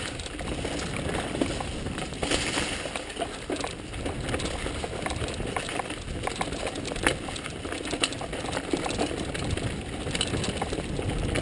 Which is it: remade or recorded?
recorded